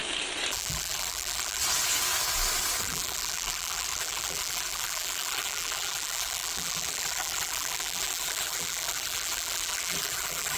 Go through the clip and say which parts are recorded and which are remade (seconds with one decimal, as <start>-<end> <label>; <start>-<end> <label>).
0.0-0.5 recorded; 0.5-1.6 remade; 1.6-2.8 recorded; 2.8-10.6 remade